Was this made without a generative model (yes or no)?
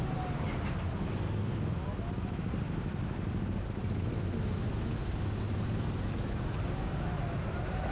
yes